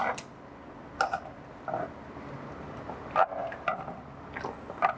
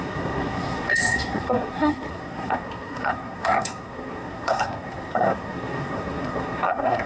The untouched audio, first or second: first